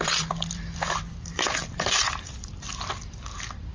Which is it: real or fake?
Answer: fake